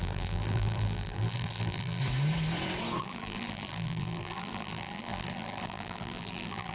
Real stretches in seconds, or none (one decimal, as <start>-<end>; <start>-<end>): 2.0-3.0